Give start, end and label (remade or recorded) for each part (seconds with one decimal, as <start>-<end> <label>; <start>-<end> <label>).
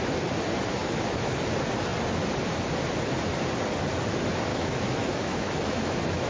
0.0-0.8 recorded; 0.8-1.4 remade; 1.4-4.5 recorded; 4.5-6.3 remade